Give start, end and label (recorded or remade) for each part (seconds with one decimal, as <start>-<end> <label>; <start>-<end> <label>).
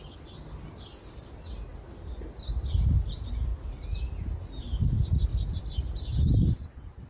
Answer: 0.0-7.1 recorded